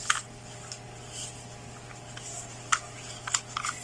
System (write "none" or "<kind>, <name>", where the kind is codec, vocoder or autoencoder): none